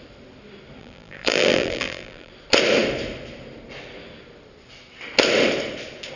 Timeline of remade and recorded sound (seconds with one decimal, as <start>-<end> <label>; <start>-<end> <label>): 0.0-0.8 recorded; 0.8-2.3 remade; 2.3-6.2 recorded